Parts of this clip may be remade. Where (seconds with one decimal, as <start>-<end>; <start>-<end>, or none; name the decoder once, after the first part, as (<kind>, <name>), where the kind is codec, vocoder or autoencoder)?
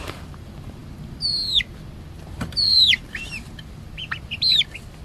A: 0.0-5.0 (vocoder, BigVGAN v2)